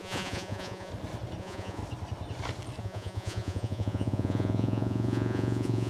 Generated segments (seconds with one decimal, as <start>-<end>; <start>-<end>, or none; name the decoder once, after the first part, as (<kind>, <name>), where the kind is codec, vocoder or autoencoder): 0.0-0.9 (vocoder, Vocos); 1.4-1.8; 2.8-5.9